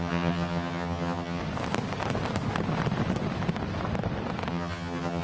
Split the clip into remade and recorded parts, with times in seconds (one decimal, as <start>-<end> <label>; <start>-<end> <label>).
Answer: 0.0-1.4 remade; 1.4-4.5 recorded; 4.5-5.2 remade